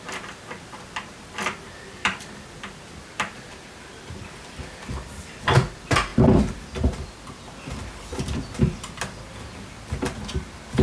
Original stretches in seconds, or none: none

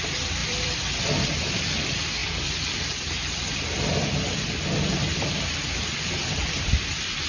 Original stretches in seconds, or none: none

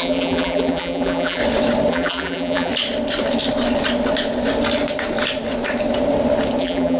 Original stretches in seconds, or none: 1.4-1.9; 2.7-6.6

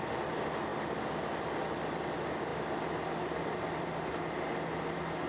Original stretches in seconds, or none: 0.0-5.3

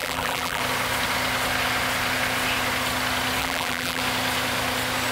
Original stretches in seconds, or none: 0.6-3.4; 4.0-5.1

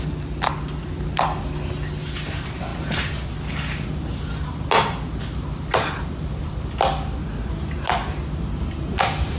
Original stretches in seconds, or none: 0.0-9.4

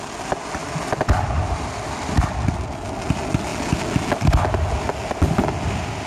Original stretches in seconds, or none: 0.0-0.6; 2.9-6.1